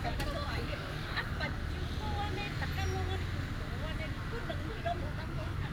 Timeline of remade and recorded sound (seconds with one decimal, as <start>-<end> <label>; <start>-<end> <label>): 0.0-1.6 remade; 1.6-4.7 recorded; 4.7-5.7 remade